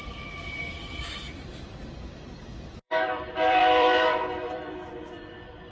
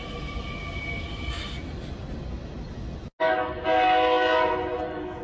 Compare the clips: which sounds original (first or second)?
second